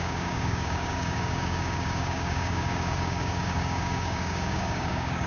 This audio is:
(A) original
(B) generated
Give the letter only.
B